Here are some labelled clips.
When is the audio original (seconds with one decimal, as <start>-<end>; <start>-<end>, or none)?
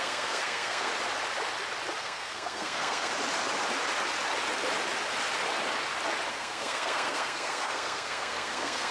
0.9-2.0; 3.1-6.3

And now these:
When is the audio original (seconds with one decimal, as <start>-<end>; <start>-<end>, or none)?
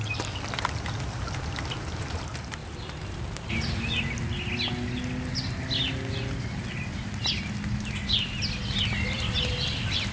0.0-10.1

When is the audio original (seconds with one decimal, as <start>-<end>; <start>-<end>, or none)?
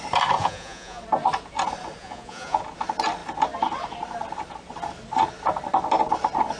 0.0-0.4; 1.0-2.0; 2.6-6.6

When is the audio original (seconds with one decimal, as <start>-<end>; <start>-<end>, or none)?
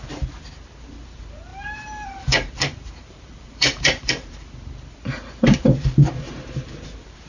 0.0-1.5; 4.1-7.3